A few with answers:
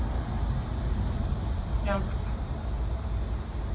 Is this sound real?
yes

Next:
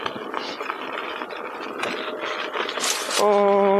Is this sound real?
yes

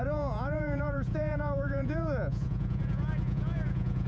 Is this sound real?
no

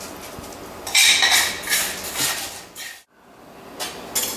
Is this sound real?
yes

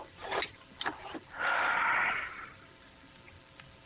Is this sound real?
yes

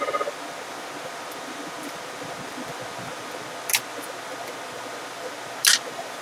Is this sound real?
yes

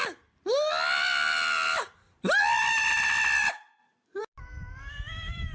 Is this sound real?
no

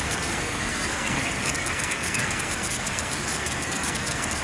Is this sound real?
no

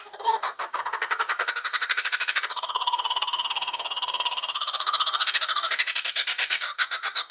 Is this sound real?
no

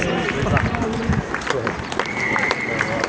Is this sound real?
no